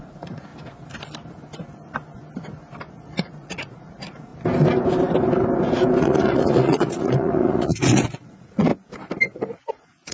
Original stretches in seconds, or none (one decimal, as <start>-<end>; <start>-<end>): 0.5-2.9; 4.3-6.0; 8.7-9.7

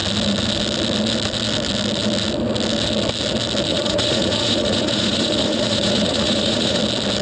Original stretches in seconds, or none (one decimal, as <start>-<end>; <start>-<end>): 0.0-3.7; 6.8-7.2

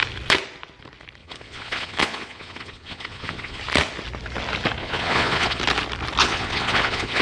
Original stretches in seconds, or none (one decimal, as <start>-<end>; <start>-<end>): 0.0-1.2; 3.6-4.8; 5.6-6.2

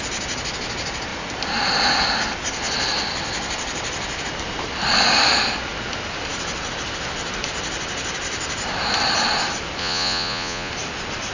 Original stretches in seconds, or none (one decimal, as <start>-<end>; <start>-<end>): 0.0-9.8; 10.7-11.3